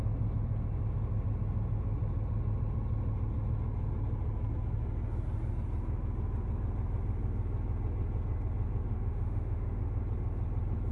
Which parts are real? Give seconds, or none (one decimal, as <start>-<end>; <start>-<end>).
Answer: 0.0-8.9; 9.8-10.9